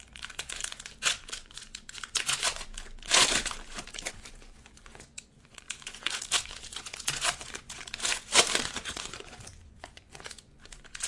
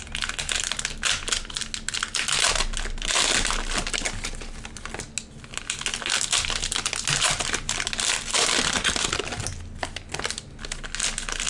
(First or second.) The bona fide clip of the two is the second